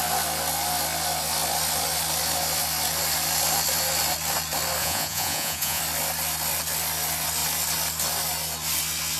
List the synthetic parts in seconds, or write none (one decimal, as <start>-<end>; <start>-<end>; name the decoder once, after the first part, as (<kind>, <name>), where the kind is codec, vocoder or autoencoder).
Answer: 4.8-5.8 (vocoder, Vocos)